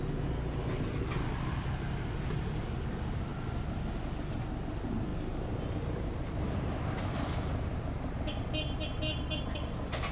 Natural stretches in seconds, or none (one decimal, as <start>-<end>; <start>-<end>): 0.0-10.1